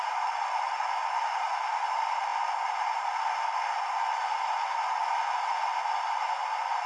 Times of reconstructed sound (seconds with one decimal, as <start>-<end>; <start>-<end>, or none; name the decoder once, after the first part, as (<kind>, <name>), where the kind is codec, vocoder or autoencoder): none